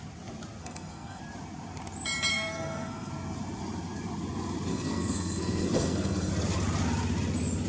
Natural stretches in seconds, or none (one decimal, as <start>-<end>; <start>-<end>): 0.0-0.6; 1.2-2.3; 3.1-4.7; 6.3-7.7

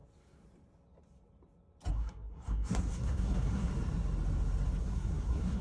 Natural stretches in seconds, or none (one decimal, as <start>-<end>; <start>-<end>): 0.0-1.9; 3.7-4.8

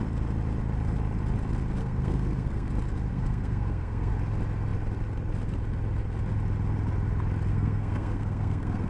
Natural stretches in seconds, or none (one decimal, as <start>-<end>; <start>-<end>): 0.0-1.8; 2.7-3.1; 4.1-7.5

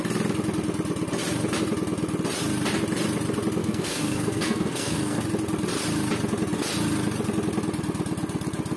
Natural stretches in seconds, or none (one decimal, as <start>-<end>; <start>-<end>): 0.0-3.6; 5.2-8.8